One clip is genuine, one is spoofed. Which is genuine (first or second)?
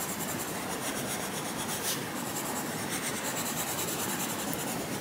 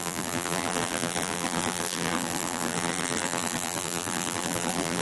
first